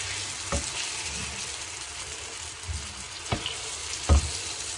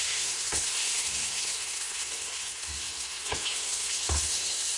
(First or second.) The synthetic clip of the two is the second